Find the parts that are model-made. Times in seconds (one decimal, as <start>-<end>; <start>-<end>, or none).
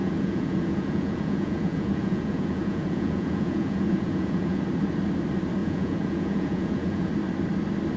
0.0-4.6; 5.6-7.1